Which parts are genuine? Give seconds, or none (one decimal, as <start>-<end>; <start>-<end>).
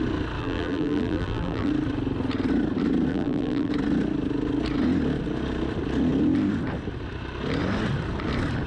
0.0-0.4; 1.7-3.1; 3.7-8.7